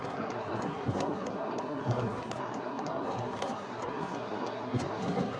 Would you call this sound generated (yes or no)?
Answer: yes